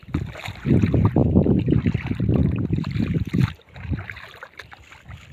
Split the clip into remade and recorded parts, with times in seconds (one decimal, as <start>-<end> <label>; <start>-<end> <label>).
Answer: 0.0-0.4 recorded; 0.4-1.6 remade; 1.6-2.4 recorded; 2.4-4.6 remade; 4.6-5.3 recorded